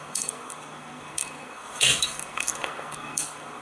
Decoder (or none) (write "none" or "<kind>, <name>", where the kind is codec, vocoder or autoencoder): codec, SNAC